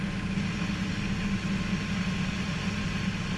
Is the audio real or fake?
real